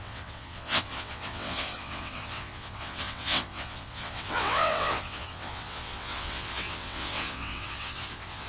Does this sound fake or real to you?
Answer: fake